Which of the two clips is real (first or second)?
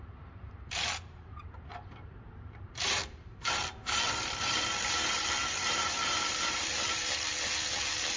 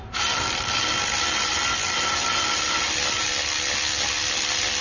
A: second